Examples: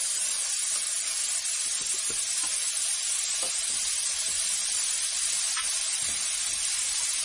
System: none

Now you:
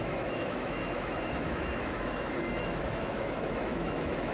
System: autoencoder, DAC-VAE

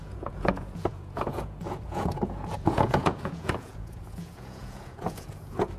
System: vocoder, Vocos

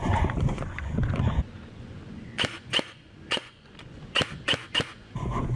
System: vocoder, Vocos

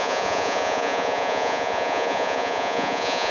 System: vocoder, Vocos